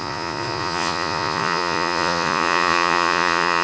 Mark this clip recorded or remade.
remade